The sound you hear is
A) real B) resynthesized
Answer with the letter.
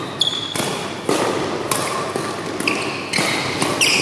A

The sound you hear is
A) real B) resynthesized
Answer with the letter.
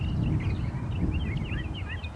A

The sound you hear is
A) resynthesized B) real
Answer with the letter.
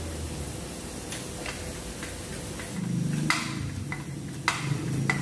B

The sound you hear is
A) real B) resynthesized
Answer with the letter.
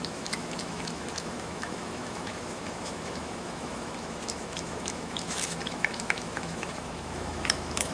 B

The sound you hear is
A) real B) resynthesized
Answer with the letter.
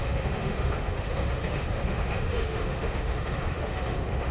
B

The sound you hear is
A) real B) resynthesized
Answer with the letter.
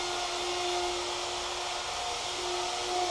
A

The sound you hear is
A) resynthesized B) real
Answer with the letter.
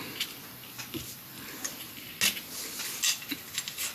B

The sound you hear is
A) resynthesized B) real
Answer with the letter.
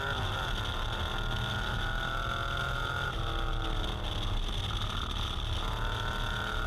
B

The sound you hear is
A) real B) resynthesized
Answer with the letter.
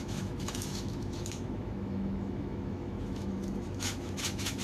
B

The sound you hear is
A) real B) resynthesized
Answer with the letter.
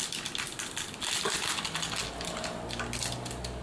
A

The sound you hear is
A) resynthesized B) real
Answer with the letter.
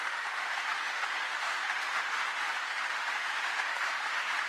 A